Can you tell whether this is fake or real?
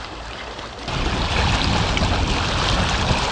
real